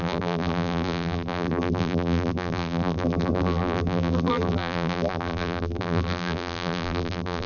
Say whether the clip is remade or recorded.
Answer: remade